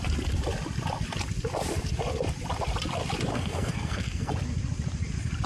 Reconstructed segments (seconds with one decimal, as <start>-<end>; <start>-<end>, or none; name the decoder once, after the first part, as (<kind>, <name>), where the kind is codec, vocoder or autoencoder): 3.3-4.3 (codec, SNAC)

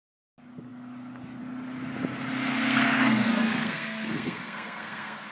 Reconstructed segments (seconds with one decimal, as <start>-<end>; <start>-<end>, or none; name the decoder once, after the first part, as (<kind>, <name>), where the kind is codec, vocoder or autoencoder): 2.5-5.3 (codec, SNAC)

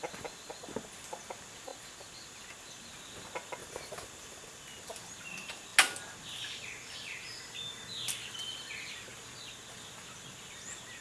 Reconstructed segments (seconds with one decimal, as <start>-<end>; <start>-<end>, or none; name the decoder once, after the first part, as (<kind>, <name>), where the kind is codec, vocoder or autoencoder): none

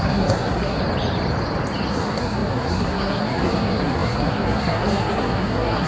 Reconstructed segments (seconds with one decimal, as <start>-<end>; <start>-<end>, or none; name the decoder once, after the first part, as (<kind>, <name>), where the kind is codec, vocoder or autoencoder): 0.0-0.8 (codec, SNAC); 1.9-5.9

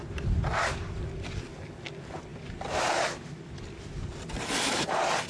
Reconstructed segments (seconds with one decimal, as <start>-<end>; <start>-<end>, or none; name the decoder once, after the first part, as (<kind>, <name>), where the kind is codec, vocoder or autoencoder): none

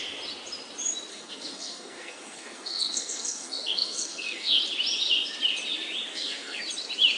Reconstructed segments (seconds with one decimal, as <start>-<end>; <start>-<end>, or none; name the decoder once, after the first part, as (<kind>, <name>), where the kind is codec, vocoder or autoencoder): 1.1-4.6 (codec, SNAC); 6.1-6.6

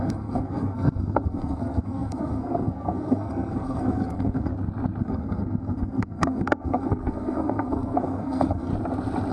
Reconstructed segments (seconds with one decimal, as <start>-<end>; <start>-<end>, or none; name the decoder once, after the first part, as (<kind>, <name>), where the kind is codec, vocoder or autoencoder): 0.0-4.5 (codec, SNAC); 5.0-8.7

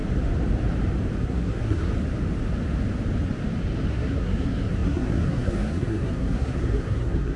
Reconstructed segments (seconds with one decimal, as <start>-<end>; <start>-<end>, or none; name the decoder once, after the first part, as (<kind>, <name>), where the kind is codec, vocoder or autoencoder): 1.2-1.9 (codec, SNAC); 3.9-7.4